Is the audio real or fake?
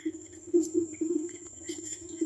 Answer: fake